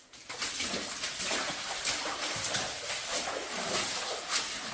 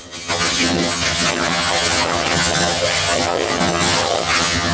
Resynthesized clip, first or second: second